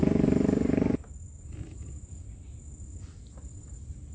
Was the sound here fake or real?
real